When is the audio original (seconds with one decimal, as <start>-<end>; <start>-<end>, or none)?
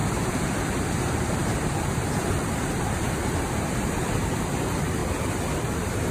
none